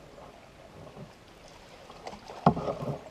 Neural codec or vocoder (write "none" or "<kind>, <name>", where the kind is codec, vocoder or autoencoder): none